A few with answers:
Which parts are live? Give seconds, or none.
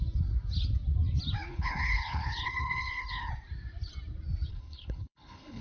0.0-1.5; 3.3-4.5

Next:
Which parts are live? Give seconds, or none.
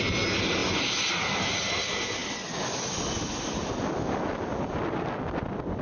0.0-5.8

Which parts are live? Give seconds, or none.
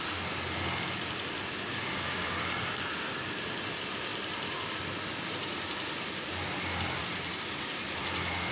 0.0-1.7; 2.8-8.5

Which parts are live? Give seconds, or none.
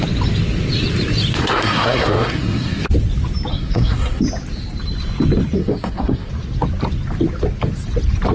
0.0-1.4; 2.8-3.5; 4.2-5.6; 6.3-8.3